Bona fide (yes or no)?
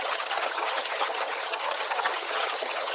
no